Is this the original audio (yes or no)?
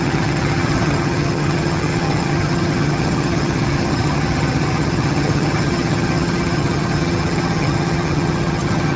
no